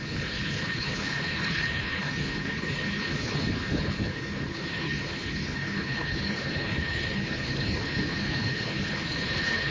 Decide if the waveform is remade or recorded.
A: remade